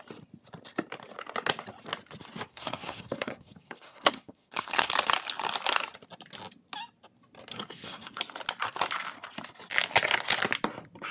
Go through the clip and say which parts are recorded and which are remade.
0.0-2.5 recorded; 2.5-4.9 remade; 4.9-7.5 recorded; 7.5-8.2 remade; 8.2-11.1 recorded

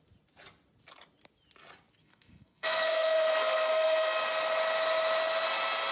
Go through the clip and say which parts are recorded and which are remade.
0.0-2.0 recorded; 2.0-4.2 remade; 4.2-5.9 recorded

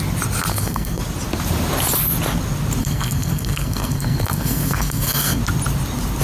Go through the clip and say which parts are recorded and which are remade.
0.0-0.5 recorded; 0.5-1.0 remade; 1.0-2.8 recorded; 2.8-5.4 remade; 5.4-6.2 recorded

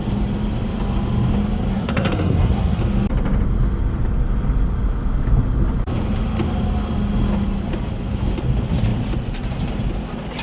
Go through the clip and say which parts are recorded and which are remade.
0.0-1.7 recorded; 1.7-2.8 remade; 2.8-10.4 recorded

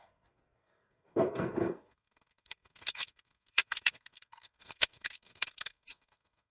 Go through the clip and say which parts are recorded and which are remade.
0.0-6.5 remade

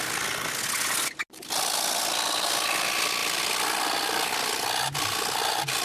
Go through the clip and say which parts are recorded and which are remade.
0.0-5.8 recorded